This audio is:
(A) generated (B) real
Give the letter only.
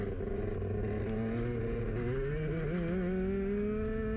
B